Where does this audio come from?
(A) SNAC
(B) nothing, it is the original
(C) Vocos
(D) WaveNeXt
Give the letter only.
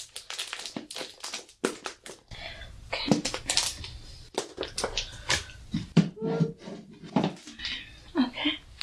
B